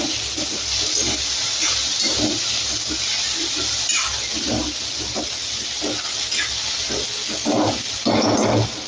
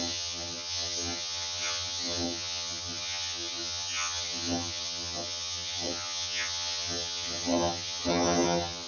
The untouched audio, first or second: first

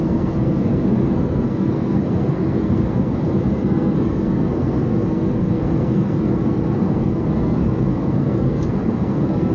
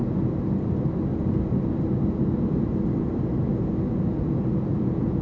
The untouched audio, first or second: second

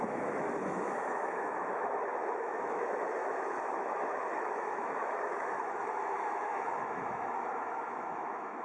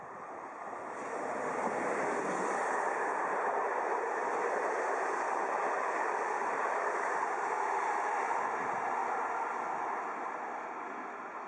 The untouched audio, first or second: second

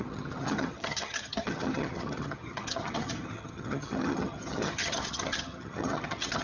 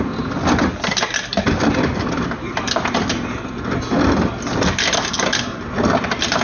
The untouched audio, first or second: second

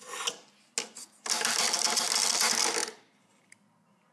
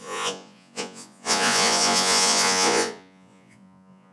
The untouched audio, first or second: first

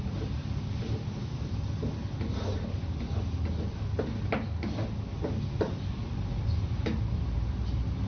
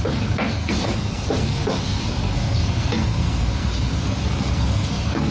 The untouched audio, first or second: first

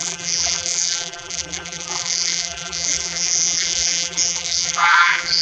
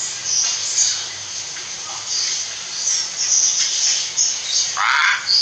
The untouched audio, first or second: second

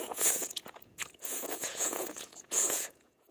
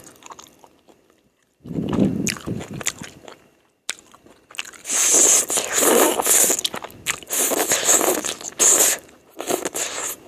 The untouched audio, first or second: second